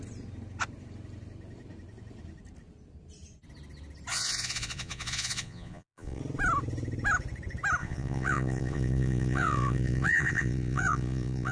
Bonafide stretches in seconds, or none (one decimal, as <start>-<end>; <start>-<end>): 0.0-4.1; 6.2-7.8